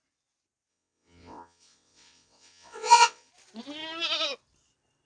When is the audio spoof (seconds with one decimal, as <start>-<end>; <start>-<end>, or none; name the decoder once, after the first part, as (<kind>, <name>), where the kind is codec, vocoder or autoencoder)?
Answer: 0.7-3.3 (vocoder, WaveNeXt)